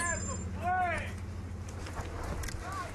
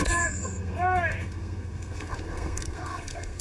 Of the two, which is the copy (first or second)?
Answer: second